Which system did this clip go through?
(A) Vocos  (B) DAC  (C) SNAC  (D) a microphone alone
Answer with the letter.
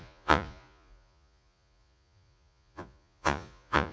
A